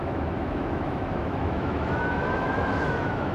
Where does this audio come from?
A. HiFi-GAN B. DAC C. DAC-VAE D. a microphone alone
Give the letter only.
C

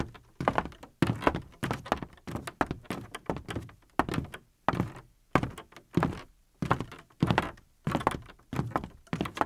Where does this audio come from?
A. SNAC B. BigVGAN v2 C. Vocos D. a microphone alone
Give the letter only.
D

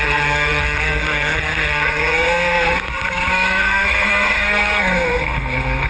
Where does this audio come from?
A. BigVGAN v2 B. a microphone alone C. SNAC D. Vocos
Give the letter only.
C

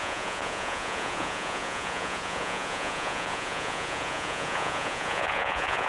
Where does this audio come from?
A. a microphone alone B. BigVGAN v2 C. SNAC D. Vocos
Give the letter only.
D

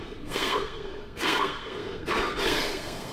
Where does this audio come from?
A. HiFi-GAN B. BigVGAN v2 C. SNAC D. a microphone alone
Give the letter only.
C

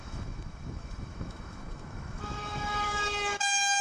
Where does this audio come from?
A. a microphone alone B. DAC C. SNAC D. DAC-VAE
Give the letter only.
D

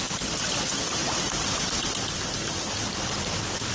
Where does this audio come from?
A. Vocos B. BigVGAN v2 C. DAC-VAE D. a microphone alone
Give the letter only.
D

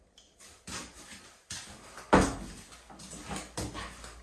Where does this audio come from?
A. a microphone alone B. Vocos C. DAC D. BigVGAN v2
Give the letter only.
A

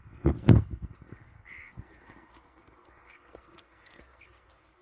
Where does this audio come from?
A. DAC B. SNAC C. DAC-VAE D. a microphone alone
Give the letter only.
B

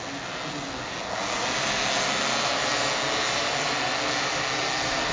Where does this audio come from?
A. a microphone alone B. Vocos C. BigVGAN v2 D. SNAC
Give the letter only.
A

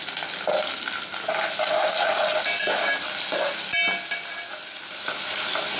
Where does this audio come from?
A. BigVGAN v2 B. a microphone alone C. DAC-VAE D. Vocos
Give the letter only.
B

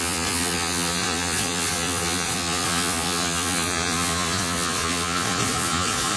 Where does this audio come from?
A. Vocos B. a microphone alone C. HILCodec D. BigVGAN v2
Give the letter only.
A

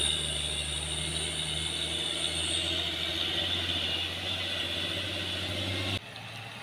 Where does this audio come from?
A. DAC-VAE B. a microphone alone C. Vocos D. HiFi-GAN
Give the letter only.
B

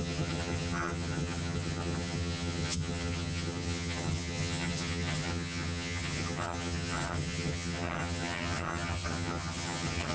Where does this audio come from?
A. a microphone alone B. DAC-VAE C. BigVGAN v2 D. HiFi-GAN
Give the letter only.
D